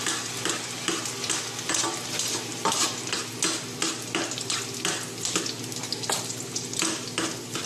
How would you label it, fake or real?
real